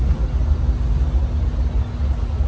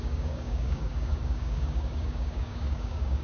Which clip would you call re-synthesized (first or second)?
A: second